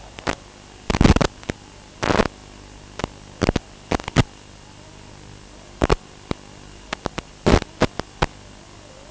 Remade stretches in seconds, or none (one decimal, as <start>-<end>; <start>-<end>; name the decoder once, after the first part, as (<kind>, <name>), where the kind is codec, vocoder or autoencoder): none